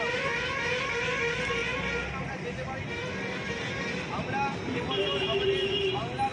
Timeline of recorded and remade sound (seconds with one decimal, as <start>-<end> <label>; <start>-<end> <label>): 0.0-6.3 recorded